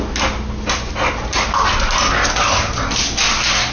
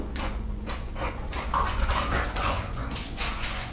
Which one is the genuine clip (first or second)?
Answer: first